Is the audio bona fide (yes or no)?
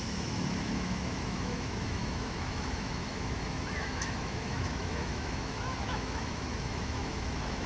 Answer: no